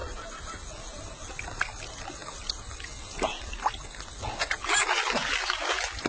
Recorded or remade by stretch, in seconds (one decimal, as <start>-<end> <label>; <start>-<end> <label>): 0.0-6.1 recorded